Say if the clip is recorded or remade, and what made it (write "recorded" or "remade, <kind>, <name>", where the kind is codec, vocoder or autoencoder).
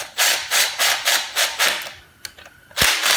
recorded